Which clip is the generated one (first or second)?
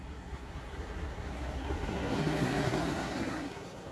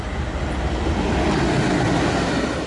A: first